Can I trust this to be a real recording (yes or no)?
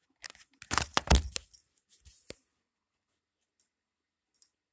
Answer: yes